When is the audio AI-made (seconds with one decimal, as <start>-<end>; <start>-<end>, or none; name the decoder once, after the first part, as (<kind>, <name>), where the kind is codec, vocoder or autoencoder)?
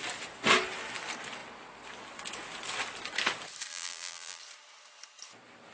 3.7-4.4 (vocoder, BigVGAN v2)